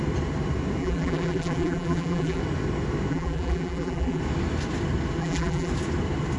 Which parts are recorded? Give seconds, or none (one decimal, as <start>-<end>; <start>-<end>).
0.0-0.8; 2.4-3.1; 4.2-5.2; 5.7-6.4